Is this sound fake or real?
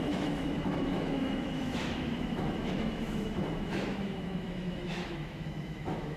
fake